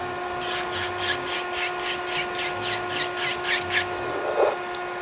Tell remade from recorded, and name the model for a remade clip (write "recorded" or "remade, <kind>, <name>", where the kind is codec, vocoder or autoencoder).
recorded